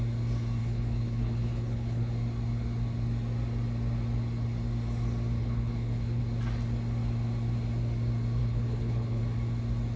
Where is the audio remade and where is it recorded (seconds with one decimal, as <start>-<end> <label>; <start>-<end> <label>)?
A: 0.0-0.6 recorded; 0.6-2.1 remade; 2.1-5.4 recorded; 5.4-6.2 remade; 6.2-8.4 recorded; 8.4-9.2 remade; 9.2-10.0 recorded